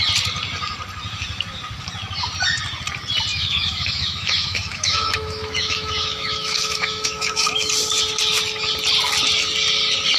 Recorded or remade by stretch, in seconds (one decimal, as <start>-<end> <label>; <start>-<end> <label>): 0.0-3.3 recorded; 3.3-7.7 remade; 7.7-10.2 recorded